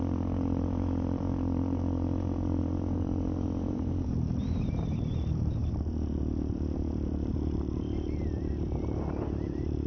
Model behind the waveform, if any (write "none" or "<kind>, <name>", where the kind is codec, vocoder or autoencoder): vocoder, BigVGAN v2